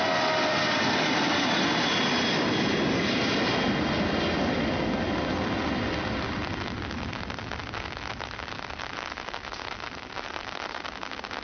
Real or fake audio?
real